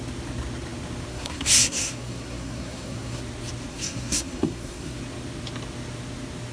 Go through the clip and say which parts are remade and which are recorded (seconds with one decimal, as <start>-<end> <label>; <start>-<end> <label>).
0.0-1.1 recorded; 1.1-3.2 remade; 3.2-3.7 recorded; 3.7-5.0 remade; 5.0-6.5 recorded